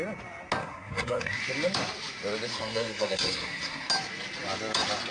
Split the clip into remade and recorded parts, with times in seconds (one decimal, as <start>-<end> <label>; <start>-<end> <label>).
0.0-0.6 recorded; 0.6-1.4 remade; 1.4-2.5 recorded; 2.5-3.9 remade; 3.9-5.1 recorded